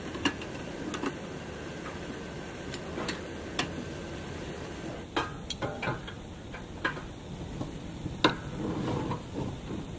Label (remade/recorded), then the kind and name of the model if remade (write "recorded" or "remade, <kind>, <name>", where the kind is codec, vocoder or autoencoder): recorded